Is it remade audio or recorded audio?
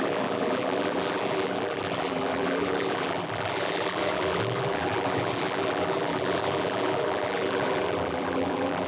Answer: remade